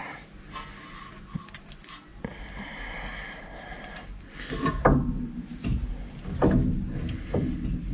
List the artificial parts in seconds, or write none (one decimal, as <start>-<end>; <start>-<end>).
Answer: none